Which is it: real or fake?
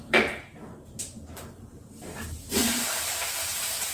fake